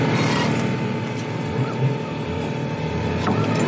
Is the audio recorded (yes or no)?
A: yes